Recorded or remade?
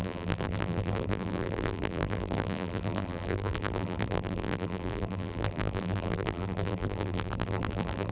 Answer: remade